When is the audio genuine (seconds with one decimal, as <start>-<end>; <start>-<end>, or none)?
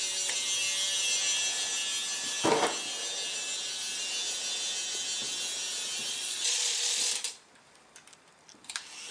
0.0-6.1; 7.1-9.1